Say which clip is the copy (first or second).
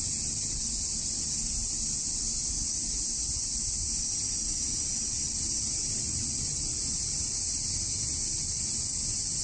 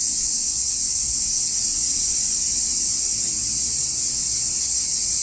second